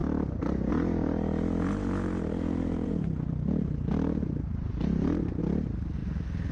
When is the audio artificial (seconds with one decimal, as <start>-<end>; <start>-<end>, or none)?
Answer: 2.5-5.4